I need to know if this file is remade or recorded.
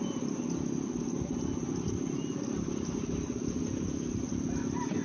recorded